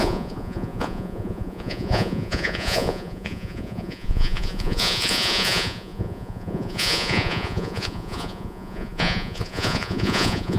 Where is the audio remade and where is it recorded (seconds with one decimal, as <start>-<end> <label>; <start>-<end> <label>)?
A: 0.0-10.6 remade